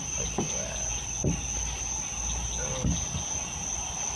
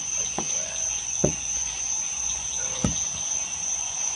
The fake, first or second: second